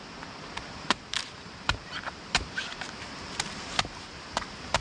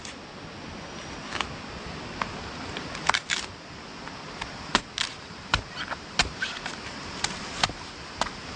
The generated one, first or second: first